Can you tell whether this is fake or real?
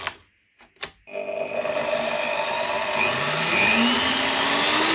real